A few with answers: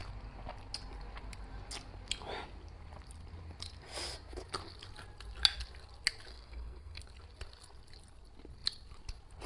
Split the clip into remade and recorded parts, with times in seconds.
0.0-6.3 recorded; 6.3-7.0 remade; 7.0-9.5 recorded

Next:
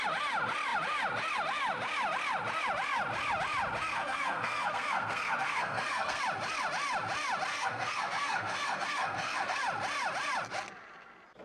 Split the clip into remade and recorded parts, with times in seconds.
0.0-3.9 recorded; 3.9-6.2 remade; 6.2-7.5 recorded; 7.5-9.6 remade; 9.6-11.4 recorded

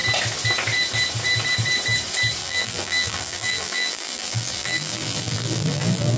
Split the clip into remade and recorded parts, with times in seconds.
0.0-2.4 recorded; 2.4-6.2 remade

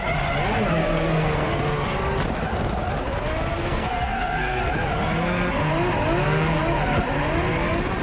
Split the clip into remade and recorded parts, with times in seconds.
0.0-0.8 recorded; 0.8-1.5 remade; 1.5-3.5 recorded; 3.5-4.6 remade; 4.6-8.0 recorded

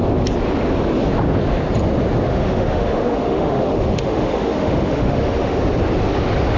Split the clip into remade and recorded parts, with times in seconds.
0.0-2.3 recorded; 2.3-5.6 remade; 5.6-6.6 recorded